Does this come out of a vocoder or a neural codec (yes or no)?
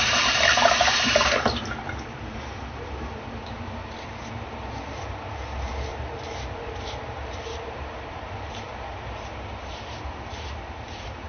yes